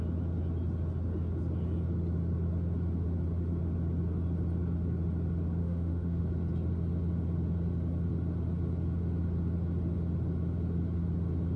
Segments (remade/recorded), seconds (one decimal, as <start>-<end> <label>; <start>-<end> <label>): 0.0-5.6 recorded; 5.6-6.2 remade; 6.2-11.6 recorded

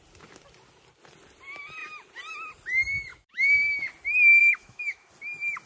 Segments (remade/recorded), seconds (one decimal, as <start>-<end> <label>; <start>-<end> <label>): 0.0-3.1 recorded; 3.1-3.8 remade; 3.8-4.4 recorded; 4.4-5.1 remade; 5.1-5.7 recorded

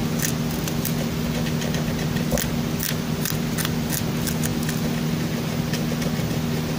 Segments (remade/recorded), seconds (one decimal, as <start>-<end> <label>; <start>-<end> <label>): 0.0-6.8 recorded

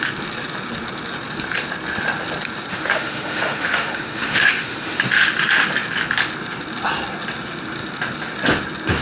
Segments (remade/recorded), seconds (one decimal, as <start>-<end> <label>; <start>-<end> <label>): 0.0-2.7 recorded; 2.7-5.0 remade; 5.0-9.0 recorded